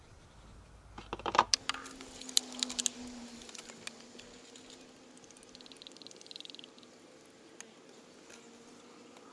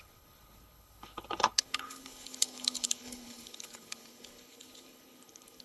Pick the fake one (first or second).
second